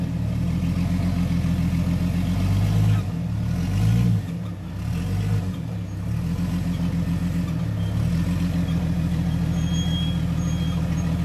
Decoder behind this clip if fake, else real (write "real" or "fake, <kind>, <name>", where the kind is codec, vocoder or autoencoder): real